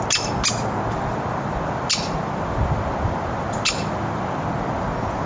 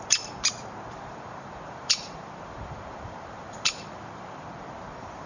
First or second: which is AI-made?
second